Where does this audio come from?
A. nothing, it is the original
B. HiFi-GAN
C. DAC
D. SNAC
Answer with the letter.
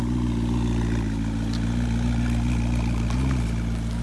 A